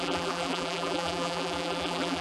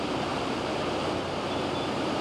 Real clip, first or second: second